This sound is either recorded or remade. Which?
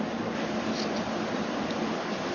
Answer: recorded